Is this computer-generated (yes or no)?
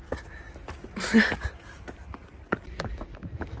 no